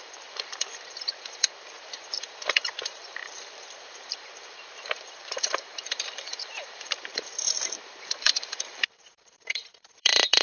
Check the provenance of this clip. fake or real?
fake